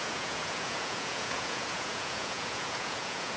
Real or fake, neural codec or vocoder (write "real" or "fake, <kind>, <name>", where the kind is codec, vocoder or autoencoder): fake, vocoder, Vocos